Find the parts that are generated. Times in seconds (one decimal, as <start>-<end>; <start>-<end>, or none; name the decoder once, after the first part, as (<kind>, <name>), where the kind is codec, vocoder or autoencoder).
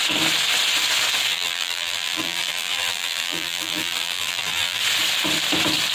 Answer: 1.3-4.8 (vocoder, BigVGAN v2)